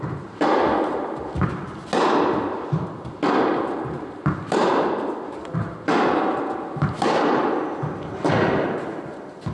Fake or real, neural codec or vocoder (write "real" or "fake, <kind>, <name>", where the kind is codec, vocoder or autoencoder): real